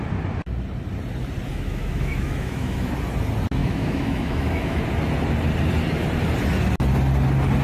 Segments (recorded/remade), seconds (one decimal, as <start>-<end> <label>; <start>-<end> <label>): 0.0-1.5 recorded; 1.5-2.9 remade; 2.9-3.6 recorded; 3.6-4.8 remade; 4.8-7.6 recorded